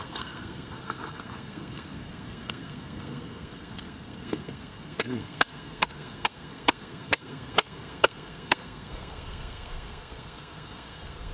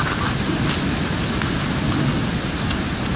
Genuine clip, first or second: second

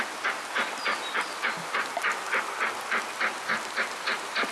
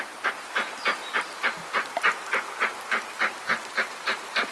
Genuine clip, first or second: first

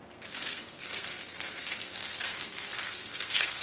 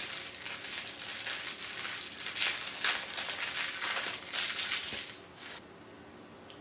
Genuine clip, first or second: second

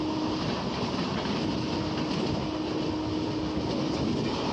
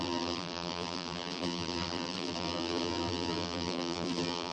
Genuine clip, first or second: first